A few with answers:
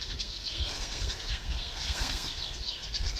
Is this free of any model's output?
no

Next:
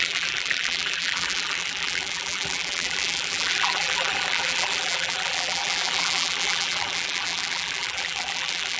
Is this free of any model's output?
no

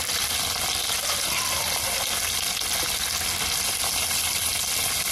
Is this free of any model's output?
yes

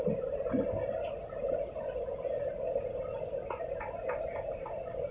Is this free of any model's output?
yes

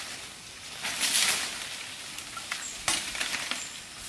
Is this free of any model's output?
yes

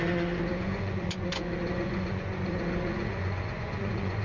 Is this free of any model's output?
no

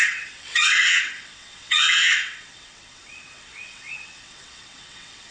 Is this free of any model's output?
no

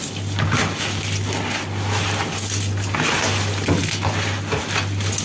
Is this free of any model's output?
yes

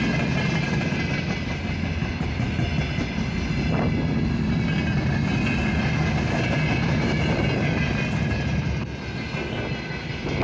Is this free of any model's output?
yes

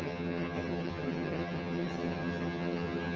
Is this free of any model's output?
no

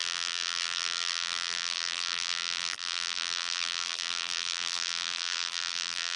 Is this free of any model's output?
no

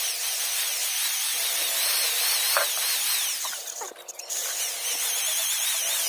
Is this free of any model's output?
no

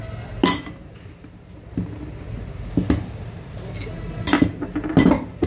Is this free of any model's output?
yes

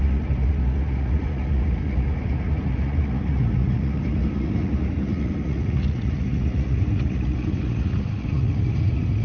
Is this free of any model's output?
no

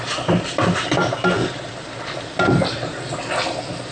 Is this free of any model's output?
yes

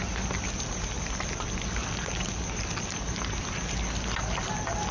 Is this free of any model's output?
yes